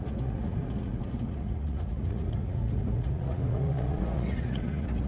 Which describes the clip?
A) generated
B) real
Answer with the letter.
A